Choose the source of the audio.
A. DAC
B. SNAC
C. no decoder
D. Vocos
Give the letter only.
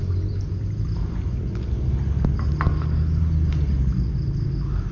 C